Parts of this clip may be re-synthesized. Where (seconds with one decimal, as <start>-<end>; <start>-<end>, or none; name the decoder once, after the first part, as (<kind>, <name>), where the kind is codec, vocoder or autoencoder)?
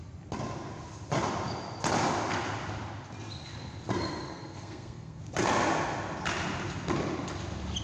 4.2-5.2 (codec, SNAC)